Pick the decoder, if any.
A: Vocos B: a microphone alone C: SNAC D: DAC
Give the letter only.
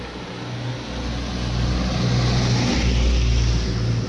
B